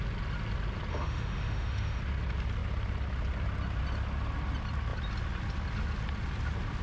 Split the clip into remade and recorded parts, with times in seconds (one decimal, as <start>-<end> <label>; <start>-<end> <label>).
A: 0.0-0.9 recorded; 0.9-2.0 remade; 2.0-6.8 recorded